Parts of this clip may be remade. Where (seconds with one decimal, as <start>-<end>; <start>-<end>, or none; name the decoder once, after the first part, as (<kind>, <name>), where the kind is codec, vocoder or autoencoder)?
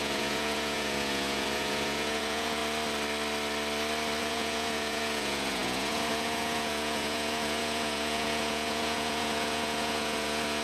0.0-2.6 (vocoder, Vocos); 4.2-10.6